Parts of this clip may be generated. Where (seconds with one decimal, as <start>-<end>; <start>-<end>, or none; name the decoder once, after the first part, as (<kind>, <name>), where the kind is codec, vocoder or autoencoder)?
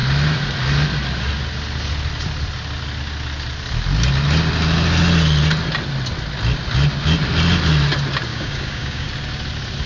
8.3-9.1 (codec, DAC)